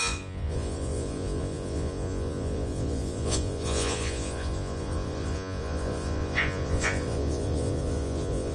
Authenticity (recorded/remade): remade